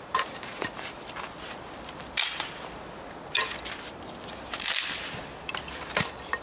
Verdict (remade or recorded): remade